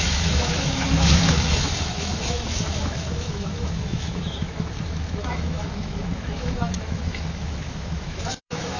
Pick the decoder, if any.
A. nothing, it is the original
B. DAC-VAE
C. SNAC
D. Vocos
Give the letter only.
B